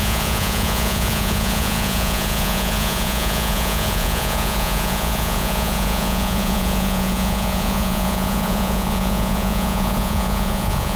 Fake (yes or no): yes